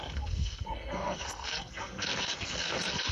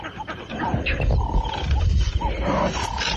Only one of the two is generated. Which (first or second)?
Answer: first